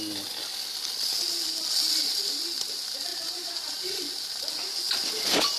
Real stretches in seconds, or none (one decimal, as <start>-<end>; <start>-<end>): 0.0-3.1; 4.0-5.6